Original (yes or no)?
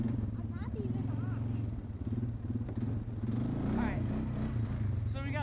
yes